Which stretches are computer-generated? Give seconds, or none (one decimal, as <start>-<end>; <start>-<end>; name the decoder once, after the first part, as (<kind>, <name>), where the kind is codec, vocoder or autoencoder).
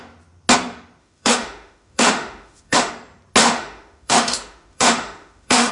1.0-2.9 (autoencoder, DAC-VAE); 3.4-5.7